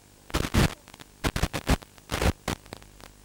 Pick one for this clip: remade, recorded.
recorded